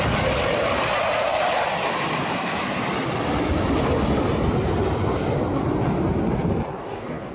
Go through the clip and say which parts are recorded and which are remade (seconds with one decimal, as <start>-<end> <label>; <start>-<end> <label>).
0.0-6.8 recorded; 6.8-7.3 remade